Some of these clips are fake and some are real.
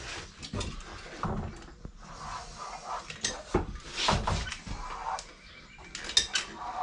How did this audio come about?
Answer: real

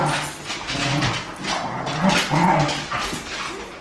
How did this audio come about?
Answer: real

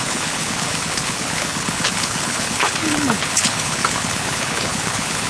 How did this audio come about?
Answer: fake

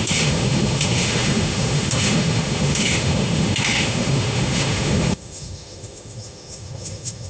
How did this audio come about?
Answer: fake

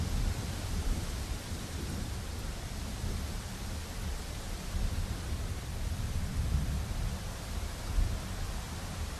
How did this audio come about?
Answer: fake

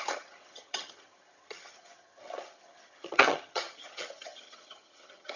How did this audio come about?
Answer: fake